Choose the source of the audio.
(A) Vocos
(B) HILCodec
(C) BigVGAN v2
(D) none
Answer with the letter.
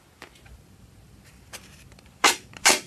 C